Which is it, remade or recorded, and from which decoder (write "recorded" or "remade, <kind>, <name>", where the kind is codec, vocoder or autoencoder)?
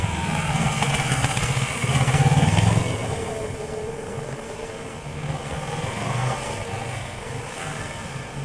remade, codec, SNAC